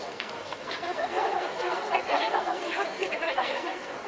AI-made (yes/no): yes